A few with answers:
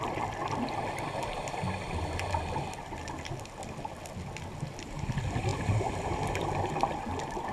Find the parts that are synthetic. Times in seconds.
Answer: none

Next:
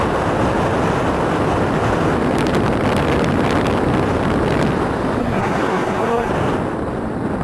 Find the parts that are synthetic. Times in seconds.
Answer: 5.2-6.3 (codec, SNAC)

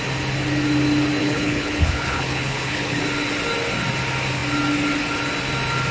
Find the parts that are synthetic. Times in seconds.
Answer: 1.2-3.0 (codec, HILCodec)

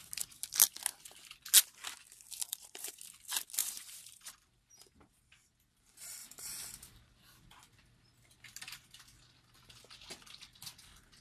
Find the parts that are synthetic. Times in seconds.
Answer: 2.5-3.0 (vocoder, BigVGAN v2); 3.6-4.3; 6.2-7.0